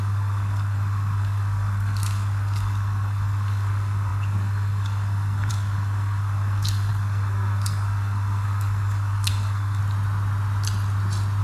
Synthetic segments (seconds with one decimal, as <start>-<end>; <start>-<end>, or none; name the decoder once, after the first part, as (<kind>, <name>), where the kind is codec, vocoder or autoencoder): 0.0-9.8 (codec, SNAC)